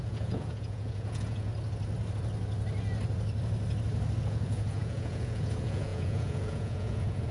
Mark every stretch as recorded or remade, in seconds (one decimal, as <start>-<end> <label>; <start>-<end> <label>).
0.0-1.5 remade; 1.5-4.3 recorded; 4.3-7.3 remade